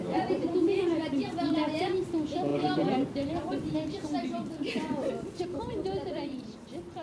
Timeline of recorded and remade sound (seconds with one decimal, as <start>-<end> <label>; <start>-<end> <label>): 0.0-7.0 remade